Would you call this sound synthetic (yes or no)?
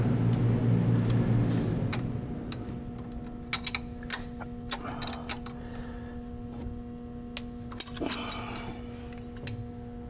no